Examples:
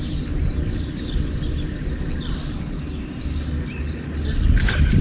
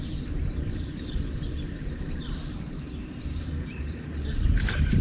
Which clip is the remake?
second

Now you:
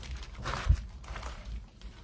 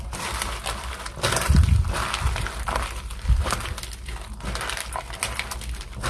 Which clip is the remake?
first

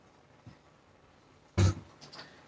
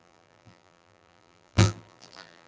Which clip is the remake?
second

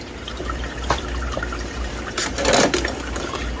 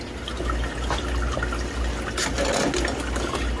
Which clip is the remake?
first